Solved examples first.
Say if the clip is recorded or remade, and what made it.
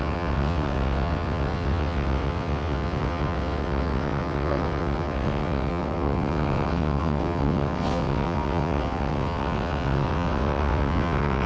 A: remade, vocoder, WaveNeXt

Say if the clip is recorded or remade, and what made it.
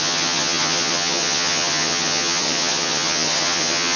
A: remade, vocoder, HiFi-GAN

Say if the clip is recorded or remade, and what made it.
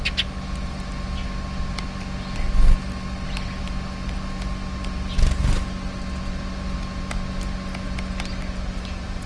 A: recorded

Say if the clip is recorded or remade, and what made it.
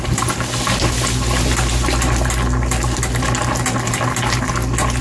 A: recorded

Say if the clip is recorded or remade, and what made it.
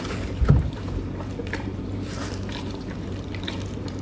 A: remade, vocoder, BigVGAN v2